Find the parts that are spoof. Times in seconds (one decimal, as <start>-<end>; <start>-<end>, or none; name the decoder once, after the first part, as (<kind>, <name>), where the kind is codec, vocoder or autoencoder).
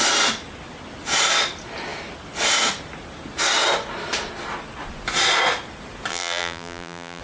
6.1-7.2 (vocoder, BigVGAN v2)